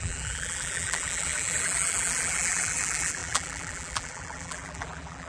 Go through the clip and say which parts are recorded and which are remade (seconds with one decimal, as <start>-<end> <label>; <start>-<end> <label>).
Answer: 0.0-5.3 remade